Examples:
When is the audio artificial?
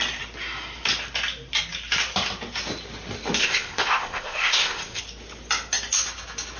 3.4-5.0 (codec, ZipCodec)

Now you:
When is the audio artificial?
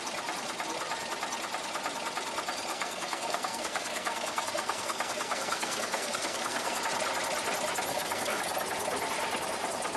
2.7-6.8 (codec, SNAC); 7.9-8.4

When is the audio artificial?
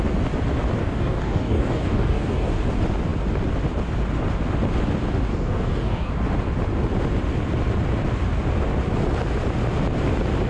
0.8-2.5 (codec, DAC); 5.3-6.1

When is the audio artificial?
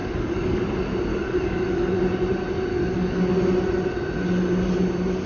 0.0-0.6 (codec, DAC); 1.1-2.0; 2.7-3.2